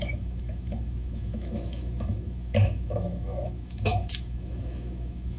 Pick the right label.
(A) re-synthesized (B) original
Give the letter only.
A